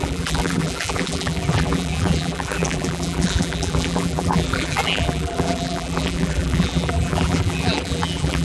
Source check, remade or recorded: remade